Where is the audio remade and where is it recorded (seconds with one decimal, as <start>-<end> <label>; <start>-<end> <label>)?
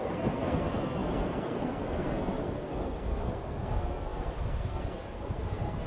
0.0-5.9 remade